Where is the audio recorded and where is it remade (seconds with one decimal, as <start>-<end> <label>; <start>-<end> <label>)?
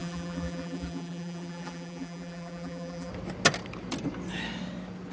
0.0-3.1 remade; 3.1-5.1 recorded